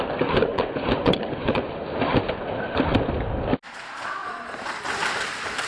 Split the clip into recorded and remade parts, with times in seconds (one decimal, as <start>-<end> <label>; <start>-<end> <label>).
0.0-0.5 recorded; 0.5-1.7 remade; 1.7-5.7 recorded